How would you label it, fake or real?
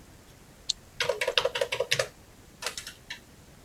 real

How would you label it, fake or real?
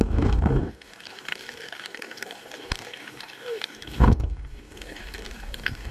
fake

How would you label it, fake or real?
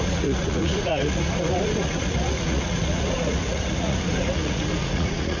fake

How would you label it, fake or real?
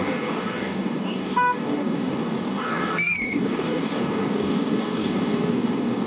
fake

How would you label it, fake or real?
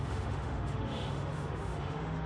fake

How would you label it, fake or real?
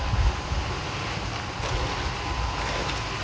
real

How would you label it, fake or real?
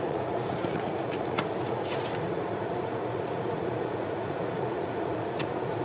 fake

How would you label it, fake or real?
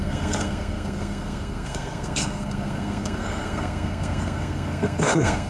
fake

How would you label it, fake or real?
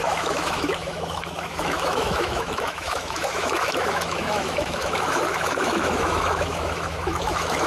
fake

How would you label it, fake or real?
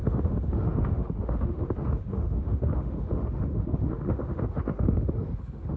fake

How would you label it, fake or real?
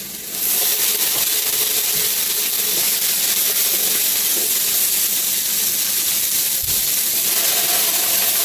real